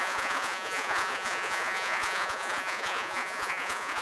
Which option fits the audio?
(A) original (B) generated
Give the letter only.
B